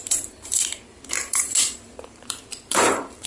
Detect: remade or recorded remade